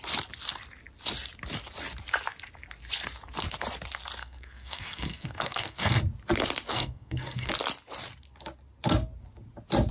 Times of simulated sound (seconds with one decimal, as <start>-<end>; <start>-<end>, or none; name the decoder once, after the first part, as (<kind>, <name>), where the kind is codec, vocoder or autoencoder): 4.2-6.0 (codec, SNAC); 6.7-7.5